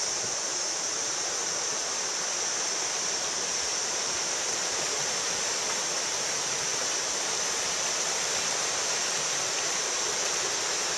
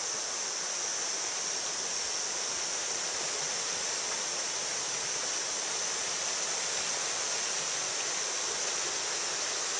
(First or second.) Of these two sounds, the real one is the second